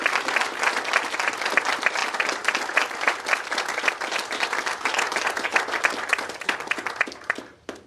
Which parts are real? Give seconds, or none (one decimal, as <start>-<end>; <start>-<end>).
0.0-7.9